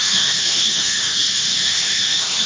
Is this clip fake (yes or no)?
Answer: yes